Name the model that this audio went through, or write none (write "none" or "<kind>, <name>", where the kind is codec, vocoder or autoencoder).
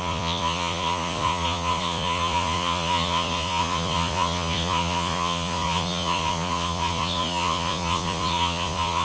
vocoder, Vocos